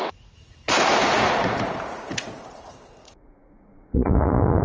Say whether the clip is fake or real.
fake